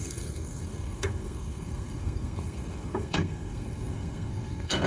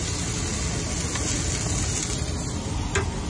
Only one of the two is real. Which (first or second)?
second